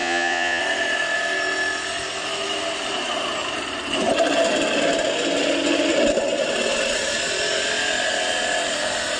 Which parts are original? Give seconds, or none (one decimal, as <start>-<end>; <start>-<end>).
0.6-9.2